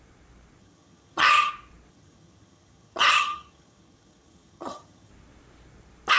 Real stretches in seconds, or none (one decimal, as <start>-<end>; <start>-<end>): 0.0-0.6; 1.5-1.9; 5.1-6.2